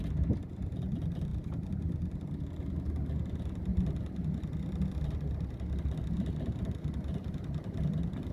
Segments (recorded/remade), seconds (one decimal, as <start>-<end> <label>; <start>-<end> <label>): 0.0-8.3 recorded